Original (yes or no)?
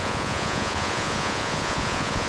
no